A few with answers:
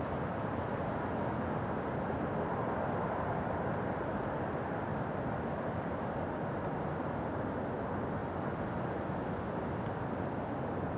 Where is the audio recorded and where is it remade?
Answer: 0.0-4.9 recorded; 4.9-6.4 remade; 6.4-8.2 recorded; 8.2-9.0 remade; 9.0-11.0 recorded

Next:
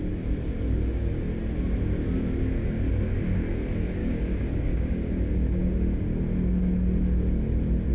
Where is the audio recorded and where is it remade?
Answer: 0.0-4.0 recorded; 4.0-5.1 remade; 5.1-7.9 recorded

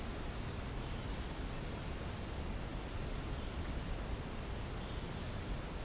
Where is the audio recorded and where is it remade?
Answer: 0.0-5.8 recorded

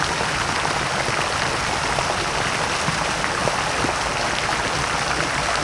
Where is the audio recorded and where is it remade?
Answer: 0.0-5.6 recorded

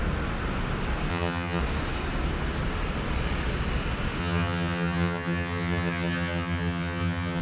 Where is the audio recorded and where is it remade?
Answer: 0.0-1.1 recorded; 1.1-1.6 remade; 1.6-4.2 recorded; 4.2-7.4 remade